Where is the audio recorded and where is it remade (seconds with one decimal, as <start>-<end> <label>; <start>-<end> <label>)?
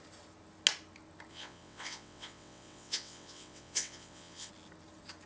0.0-1.3 recorded; 1.3-4.5 remade; 4.5-5.3 recorded